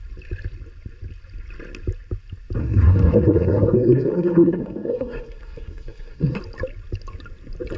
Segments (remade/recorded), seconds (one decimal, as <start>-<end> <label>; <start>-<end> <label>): 0.0-2.6 recorded; 2.6-6.4 remade; 6.4-7.8 recorded